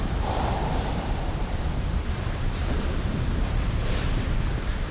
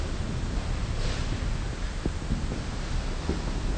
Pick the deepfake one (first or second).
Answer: first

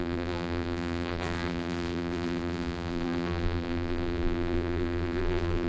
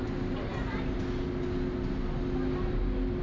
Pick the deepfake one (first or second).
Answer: first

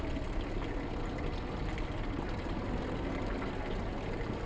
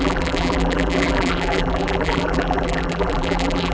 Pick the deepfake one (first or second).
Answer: second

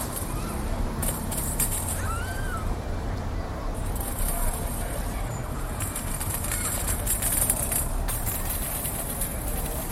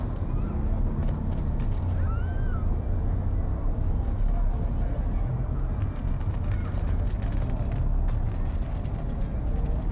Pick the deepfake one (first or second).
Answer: first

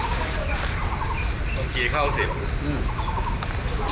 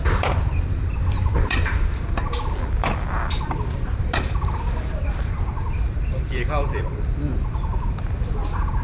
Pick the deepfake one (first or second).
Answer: second